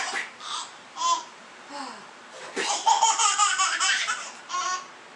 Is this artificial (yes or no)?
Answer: yes